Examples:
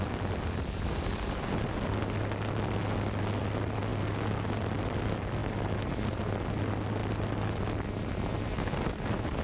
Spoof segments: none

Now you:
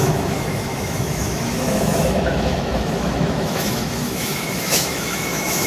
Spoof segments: 0.0-5.7 (autoencoder, DAC-VAE)

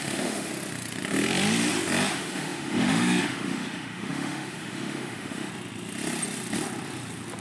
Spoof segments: 0.0-0.5 (autoencoder, DAC-VAE); 2.1-5.5

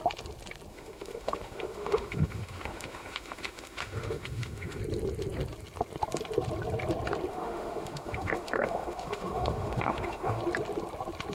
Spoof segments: 0.7-4.8 (autoencoder, DAC-VAE); 7.3-10.4

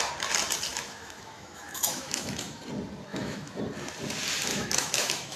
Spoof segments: 0.7-2.6 (autoencoder, DAC-VAE); 3.1-3.6; 4.5-5.4

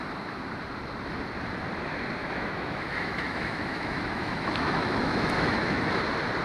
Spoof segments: 2.2-6.0 (autoencoder, DAC-VAE)